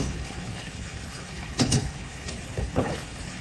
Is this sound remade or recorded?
remade